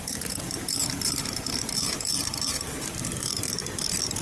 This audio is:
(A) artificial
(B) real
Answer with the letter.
A